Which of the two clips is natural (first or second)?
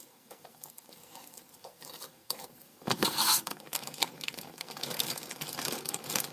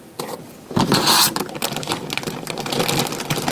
second